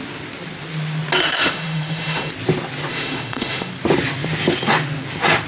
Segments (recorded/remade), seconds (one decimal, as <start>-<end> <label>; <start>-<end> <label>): 0.0-1.2 recorded; 1.2-2.3 remade; 2.3-2.9 recorded; 2.9-3.7 remade; 3.7-5.5 recorded

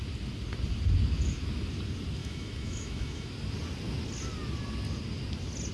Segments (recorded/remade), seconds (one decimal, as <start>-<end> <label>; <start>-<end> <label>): 0.0-2.2 recorded; 2.2-3.3 remade; 3.3-5.7 recorded